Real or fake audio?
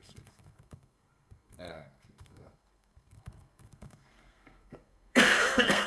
fake